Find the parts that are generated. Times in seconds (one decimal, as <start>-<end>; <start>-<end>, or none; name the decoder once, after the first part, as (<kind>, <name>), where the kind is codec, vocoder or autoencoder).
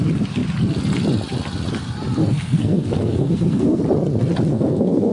2.2-3.8 (codec, SNAC); 4.5-5.1